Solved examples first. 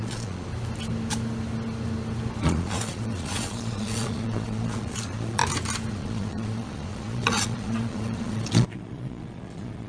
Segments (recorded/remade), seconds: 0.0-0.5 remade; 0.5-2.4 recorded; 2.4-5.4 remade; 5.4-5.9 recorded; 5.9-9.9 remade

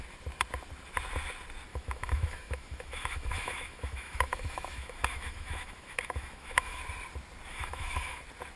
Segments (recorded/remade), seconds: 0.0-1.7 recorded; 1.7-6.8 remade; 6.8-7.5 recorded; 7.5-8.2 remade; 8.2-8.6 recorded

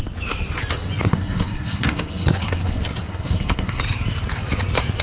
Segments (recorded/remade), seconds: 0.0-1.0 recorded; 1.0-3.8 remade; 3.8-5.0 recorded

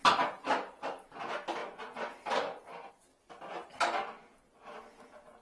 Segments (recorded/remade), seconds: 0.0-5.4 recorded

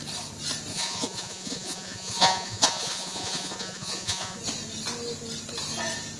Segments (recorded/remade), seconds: 0.0-0.7 recorded; 0.7-4.4 remade; 4.4-6.2 recorded

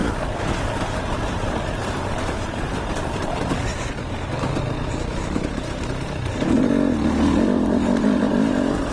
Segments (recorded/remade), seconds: 0.0-0.6 recorded; 0.6-3.7 remade; 3.7-8.9 recorded